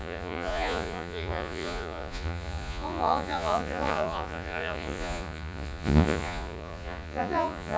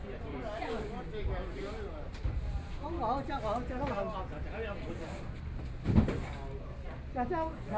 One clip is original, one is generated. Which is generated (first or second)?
first